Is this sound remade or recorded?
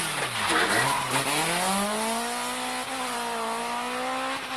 recorded